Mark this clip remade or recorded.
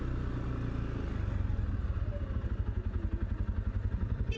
recorded